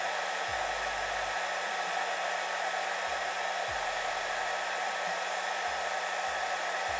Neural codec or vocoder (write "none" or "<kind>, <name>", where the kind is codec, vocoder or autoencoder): none